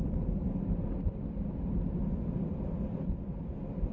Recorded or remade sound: recorded